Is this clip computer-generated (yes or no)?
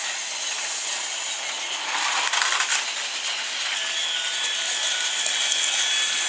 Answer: no